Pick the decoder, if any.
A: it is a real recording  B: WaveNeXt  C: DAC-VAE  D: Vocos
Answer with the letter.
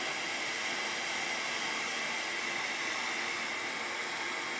A